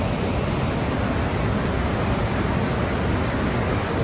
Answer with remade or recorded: recorded